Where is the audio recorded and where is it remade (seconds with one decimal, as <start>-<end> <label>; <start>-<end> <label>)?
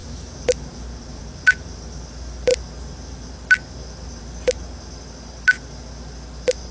0.0-6.7 recorded